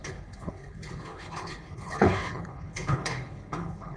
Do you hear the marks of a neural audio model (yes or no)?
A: yes